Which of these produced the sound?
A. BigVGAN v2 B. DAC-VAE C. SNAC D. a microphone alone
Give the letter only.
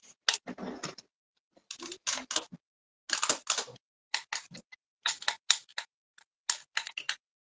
D